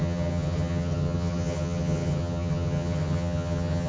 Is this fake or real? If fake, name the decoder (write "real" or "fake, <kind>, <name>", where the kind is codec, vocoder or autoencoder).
fake, vocoder, HiFi-GAN